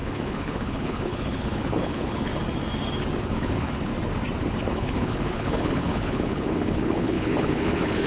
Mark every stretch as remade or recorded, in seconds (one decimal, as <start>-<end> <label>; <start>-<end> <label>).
0.0-2.3 remade; 2.3-3.2 recorded; 3.2-3.9 remade; 3.9-4.7 recorded; 4.7-8.1 remade